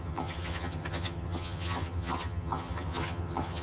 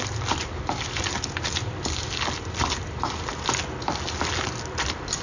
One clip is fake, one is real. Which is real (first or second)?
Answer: second